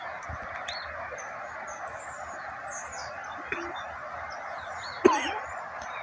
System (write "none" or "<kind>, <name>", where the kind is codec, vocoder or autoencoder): none